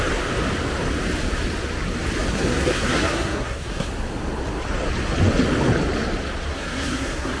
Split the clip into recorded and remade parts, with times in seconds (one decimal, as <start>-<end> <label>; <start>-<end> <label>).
0.0-2.3 recorded; 2.3-3.9 remade; 3.9-6.5 recorded; 6.5-7.4 remade